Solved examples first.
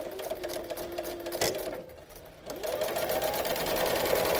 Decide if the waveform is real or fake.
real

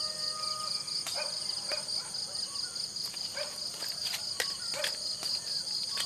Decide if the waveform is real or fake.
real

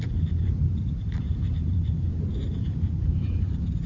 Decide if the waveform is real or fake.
fake